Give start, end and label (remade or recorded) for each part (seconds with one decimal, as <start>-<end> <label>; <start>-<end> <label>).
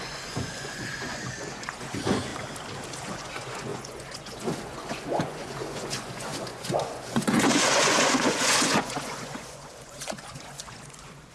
0.0-2.3 remade; 2.3-3.0 recorded; 3.0-11.3 remade